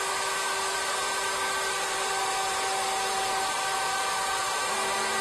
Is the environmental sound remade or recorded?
recorded